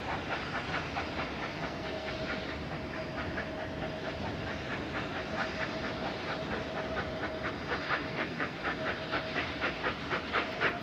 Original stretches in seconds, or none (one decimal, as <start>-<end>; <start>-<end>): 0.0-1.5; 2.1-8.1; 8.6-10.8